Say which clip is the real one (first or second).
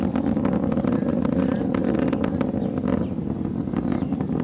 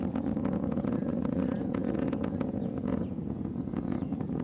first